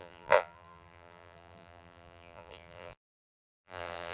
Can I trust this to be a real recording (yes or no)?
no